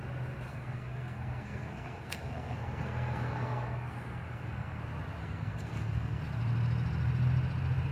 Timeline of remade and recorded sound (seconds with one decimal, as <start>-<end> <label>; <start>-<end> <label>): 0.0-0.5 recorded; 0.5-4.8 remade; 4.8-5.2 recorded; 5.2-6.2 remade; 6.2-7.9 recorded